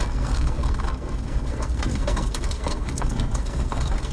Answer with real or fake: fake